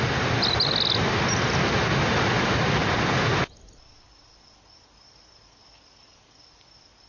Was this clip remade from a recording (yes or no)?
no